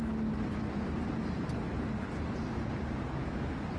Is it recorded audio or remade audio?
recorded